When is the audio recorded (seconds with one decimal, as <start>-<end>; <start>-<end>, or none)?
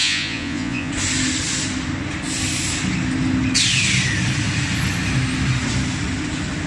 0.9-6.7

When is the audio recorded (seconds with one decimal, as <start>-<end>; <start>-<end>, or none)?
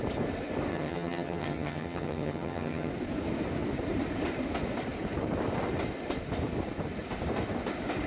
0.0-0.7; 2.9-8.1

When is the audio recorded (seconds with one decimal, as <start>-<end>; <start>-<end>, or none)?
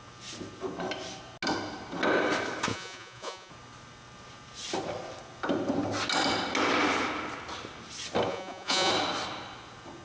0.0-2.7; 3.5-8.3; 8.9-10.0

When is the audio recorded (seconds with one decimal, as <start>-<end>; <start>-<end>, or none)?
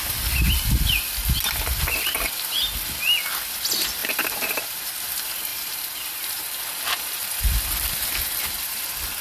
0.0-4.0; 4.9-5.5; 6.4-9.2